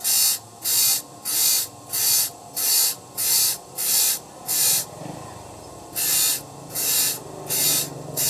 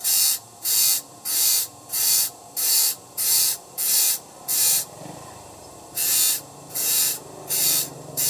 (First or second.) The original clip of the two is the first